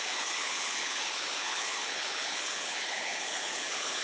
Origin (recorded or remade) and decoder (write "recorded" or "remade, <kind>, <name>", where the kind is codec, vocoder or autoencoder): remade, codec, HILCodec